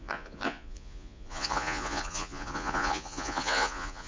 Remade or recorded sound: remade